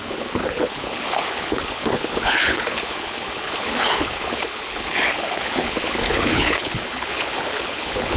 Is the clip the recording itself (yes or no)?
no